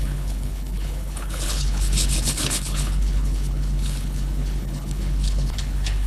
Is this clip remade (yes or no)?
yes